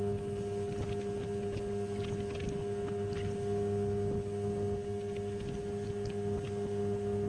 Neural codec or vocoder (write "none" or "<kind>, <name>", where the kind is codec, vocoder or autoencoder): none